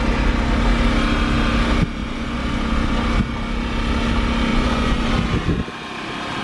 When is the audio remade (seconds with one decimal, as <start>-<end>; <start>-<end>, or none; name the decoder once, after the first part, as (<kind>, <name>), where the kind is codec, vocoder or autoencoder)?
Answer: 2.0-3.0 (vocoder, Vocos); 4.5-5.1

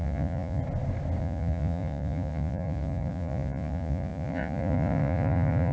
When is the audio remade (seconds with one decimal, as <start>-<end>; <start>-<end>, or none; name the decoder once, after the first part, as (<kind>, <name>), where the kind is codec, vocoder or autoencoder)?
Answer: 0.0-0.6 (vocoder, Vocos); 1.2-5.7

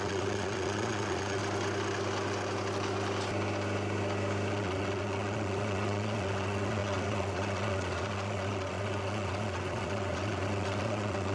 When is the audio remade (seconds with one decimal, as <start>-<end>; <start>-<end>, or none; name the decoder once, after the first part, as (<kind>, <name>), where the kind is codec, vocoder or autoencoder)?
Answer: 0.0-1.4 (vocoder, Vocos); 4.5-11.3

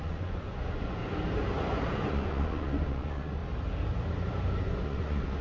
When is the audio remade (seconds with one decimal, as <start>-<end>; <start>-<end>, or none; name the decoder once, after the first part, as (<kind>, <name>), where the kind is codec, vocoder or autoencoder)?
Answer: 0.0-1.0 (vocoder, Vocos); 2.1-3.4; 4.6-5.4

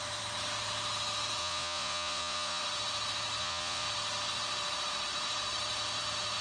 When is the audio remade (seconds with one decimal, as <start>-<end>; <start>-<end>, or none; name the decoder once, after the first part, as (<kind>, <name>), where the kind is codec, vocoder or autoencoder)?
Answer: 1.4-2.6 (vocoder, Vocos); 3.4-3.9